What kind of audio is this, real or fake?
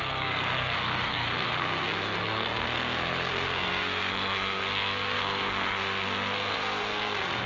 fake